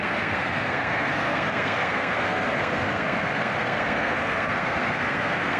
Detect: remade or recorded remade